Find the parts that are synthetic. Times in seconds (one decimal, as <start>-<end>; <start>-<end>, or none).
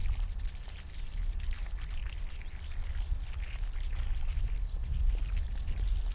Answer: none